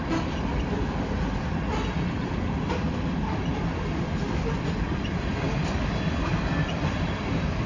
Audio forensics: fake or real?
fake